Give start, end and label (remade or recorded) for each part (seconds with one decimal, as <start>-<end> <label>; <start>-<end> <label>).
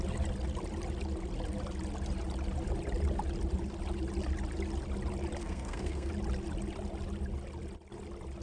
0.0-5.4 recorded; 5.4-6.1 remade; 6.1-8.4 recorded